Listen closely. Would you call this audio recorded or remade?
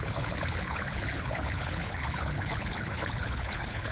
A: remade